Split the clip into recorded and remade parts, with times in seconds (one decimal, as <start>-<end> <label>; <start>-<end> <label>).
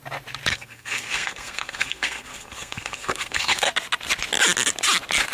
0.0-0.5 recorded; 0.5-3.7 remade; 3.7-5.3 recorded